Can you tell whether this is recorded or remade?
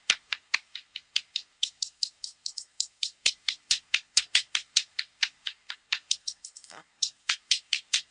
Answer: remade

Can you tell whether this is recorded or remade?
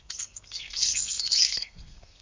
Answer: remade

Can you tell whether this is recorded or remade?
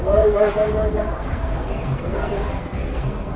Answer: remade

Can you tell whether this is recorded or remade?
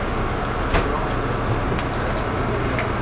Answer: recorded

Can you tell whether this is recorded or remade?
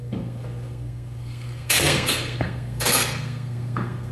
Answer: remade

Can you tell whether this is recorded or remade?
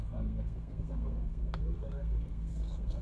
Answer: remade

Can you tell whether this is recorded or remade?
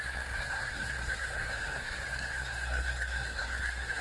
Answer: remade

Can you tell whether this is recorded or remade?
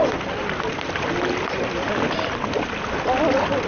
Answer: recorded